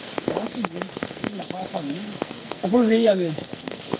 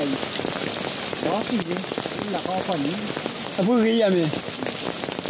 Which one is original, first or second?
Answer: second